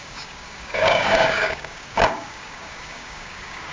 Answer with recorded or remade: remade